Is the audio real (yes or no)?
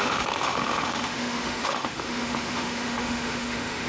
no